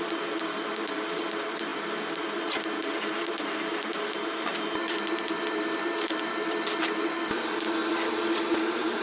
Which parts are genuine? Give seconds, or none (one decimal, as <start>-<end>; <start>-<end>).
none